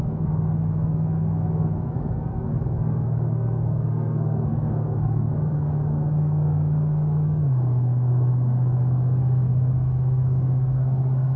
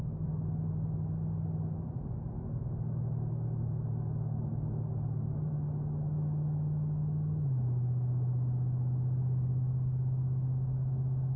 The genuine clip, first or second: second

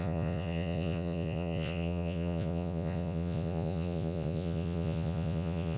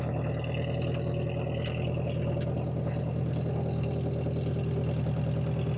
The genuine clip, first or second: second